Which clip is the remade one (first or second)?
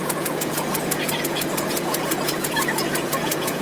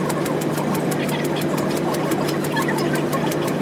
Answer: first